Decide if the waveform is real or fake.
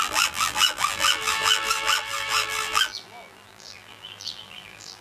fake